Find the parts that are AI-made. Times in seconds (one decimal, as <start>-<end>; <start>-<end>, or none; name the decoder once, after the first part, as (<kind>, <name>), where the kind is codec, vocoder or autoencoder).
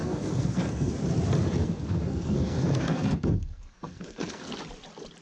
0.0-0.9 (codec, SNAC); 1.6-4.5